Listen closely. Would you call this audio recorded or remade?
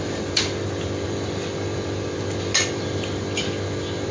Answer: recorded